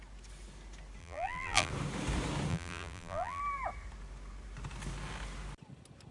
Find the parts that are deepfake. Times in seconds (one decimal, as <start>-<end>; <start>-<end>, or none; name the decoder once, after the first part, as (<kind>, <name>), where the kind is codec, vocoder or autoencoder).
1.0-1.7 (vocoder, BigVGAN v2); 2.5-3.4